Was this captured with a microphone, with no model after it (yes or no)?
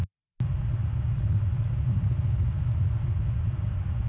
yes